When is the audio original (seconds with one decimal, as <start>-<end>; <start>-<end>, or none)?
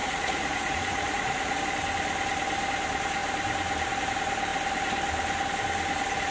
1.6-6.3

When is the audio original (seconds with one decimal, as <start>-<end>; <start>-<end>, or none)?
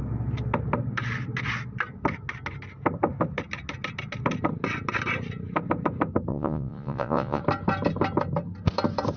0.0-6.3; 7.4-9.2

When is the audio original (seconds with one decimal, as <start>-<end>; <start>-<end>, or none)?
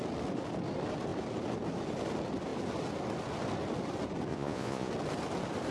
0.0-4.3; 4.9-5.7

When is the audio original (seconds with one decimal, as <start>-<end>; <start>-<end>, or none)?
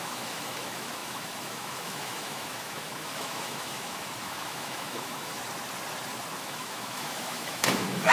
5.4-6.4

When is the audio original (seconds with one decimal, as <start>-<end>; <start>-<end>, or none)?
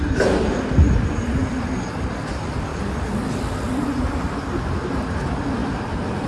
0.0-6.3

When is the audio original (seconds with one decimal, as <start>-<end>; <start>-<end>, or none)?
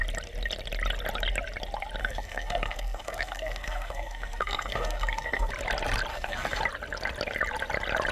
0.0-2.0; 5.5-6.1; 6.6-8.1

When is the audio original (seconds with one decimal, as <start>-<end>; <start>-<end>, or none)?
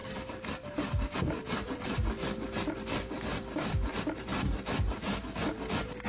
0.0-6.1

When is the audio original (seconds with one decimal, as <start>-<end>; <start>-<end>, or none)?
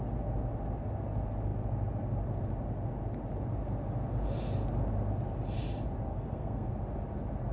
0.0-6.1; 6.7-7.5